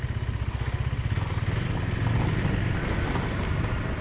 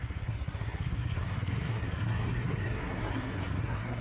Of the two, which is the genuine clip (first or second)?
first